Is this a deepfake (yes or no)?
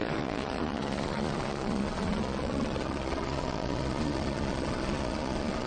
yes